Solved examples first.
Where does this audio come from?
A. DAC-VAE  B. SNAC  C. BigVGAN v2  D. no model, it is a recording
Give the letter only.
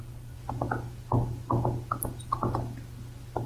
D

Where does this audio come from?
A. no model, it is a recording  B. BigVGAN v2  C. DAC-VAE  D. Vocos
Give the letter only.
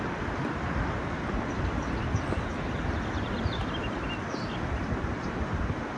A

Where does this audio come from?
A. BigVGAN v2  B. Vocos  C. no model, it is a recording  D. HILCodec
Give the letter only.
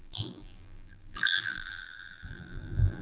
A